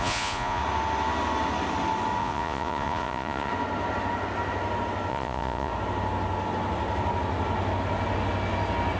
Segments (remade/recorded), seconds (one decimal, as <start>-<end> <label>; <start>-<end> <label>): 0.0-0.6 remade; 0.6-2.2 recorded; 2.2-3.5 remade; 3.5-5.1 recorded; 5.1-5.7 remade; 5.7-9.0 recorded